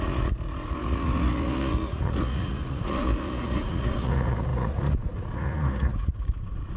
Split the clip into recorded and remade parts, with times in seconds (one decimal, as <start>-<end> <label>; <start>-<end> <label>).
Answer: 0.0-6.8 remade